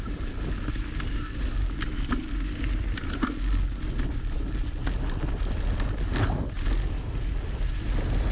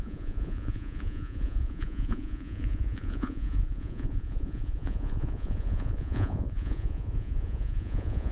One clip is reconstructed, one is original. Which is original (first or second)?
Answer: first